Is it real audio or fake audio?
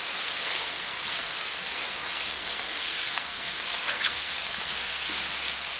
fake